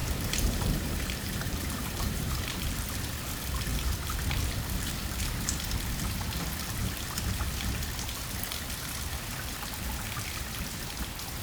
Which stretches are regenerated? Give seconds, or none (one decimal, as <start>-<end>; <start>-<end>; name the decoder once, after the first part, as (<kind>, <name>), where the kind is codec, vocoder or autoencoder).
0.0-2.5 (vocoder, BigVGAN v2)